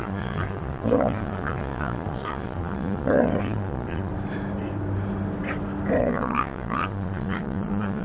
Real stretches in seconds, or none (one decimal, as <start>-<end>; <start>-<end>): 4.1-6.0